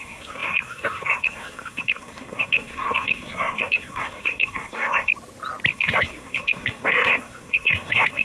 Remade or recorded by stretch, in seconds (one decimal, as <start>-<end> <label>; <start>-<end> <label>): 0.0-5.1 remade; 5.1-5.7 recorded; 5.7-8.2 remade